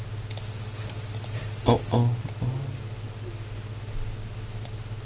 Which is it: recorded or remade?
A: recorded